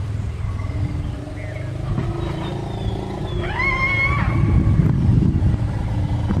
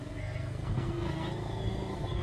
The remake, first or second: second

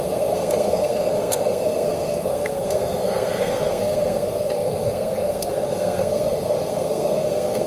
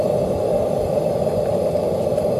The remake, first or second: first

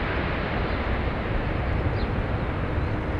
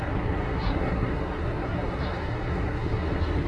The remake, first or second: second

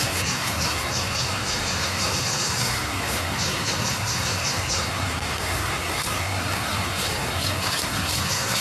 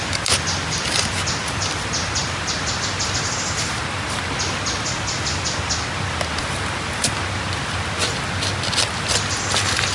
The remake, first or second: first